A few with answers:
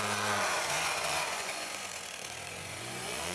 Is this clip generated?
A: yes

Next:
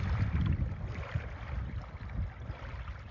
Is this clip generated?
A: no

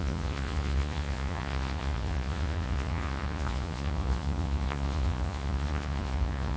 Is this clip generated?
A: yes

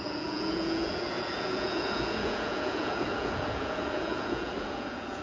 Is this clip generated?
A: yes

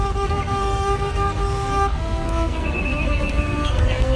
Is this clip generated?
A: yes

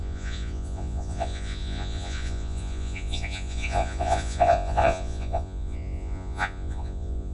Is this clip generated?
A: yes